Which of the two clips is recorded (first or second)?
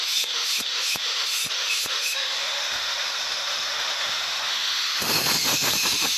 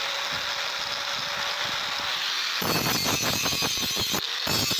second